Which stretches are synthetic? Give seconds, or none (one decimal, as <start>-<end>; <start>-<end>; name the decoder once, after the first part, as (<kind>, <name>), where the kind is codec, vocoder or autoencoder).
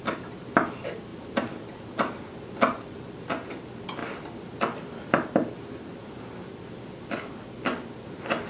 none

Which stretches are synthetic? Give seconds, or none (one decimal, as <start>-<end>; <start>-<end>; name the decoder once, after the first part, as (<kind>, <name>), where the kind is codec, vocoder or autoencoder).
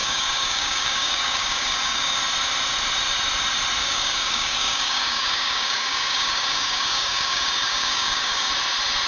0.0-2.2 (codec, DAC); 3.8-8.5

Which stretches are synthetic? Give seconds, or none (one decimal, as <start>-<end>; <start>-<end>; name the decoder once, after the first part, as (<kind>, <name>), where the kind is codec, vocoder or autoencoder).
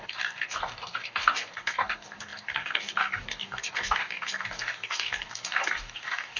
0.0-6.4 (codec, DAC)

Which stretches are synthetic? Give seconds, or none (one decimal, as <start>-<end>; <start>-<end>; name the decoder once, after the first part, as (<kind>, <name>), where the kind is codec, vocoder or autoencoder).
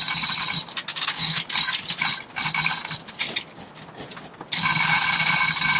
0.9-1.4 (codec, DAC)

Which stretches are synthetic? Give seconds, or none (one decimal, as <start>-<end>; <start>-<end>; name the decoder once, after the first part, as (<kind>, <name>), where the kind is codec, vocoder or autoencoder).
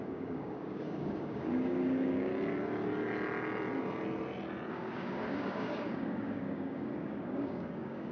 0.0-2.3 (codec, DAC); 4.7-8.1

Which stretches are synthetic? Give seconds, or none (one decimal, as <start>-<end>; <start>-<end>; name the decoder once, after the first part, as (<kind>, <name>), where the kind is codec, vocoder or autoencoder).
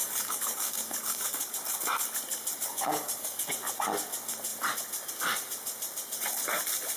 0.0-1.5 (codec, DAC); 2.7-3.5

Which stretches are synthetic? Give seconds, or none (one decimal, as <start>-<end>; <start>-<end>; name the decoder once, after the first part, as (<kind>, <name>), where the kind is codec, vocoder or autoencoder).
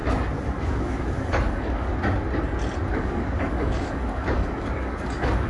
0.6-1.9 (codec, DAC); 2.9-5.5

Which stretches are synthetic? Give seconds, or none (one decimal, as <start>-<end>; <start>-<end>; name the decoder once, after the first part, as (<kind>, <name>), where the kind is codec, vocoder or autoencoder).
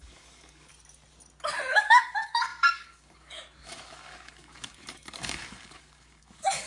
0.0-0.7 (codec, DAC); 1.7-6.7